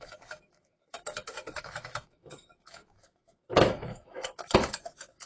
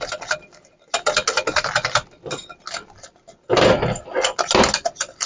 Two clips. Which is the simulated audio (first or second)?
first